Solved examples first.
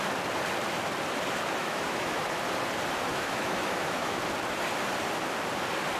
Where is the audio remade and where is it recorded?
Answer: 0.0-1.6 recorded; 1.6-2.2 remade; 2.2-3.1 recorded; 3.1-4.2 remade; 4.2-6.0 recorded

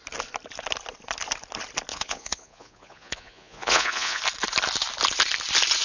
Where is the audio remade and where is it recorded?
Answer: 0.0-1.9 recorded; 1.9-4.2 remade; 4.2-5.8 recorded

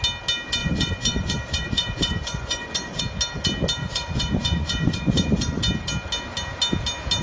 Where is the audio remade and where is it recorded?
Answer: 0.0-0.6 recorded; 0.6-3.0 remade; 3.0-3.8 recorded; 3.8-5.6 remade; 5.6-7.2 recorded

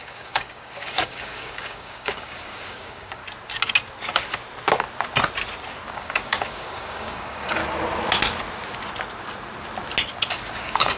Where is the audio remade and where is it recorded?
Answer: 0.0-3.2 remade; 3.2-5.9 recorded; 5.9-7.6 remade; 7.6-10.5 recorded; 10.5-11.0 remade

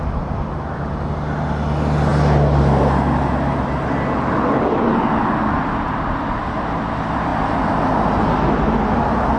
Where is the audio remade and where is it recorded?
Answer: 0.0-9.4 recorded

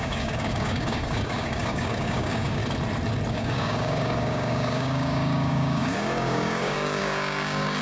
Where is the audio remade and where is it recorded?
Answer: 0.0-2.6 remade; 2.6-3.3 recorded; 3.3-7.8 remade

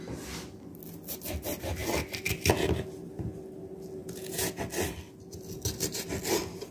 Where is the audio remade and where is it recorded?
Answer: 0.0-4.0 recorded; 4.0-4.6 remade; 4.6-6.7 recorded

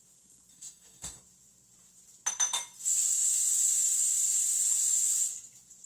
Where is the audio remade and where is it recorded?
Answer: 0.0-0.5 recorded; 0.5-1.2 remade; 1.2-5.9 recorded